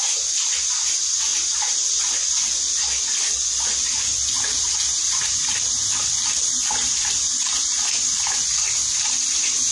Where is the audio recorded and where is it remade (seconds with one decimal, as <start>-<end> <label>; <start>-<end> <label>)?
0.0-9.7 recorded